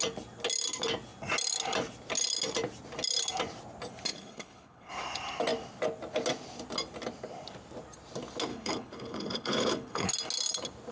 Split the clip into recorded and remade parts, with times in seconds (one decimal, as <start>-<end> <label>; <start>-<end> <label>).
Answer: 0.0-4.1 recorded; 4.1-4.9 remade; 4.9-8.5 recorded; 8.5-10.1 remade; 10.1-10.9 recorded